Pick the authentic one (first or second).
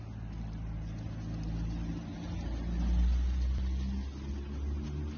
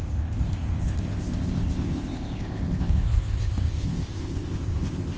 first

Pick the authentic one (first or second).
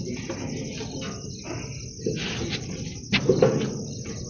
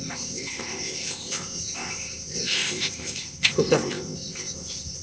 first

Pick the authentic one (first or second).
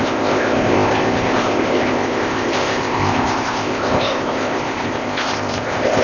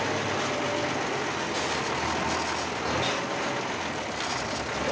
second